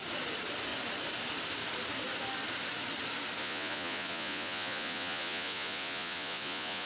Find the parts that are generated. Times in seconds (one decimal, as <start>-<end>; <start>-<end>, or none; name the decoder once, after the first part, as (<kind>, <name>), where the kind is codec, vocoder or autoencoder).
3.4-6.9 (vocoder, Vocos)